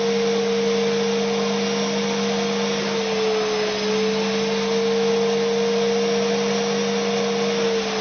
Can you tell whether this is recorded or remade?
recorded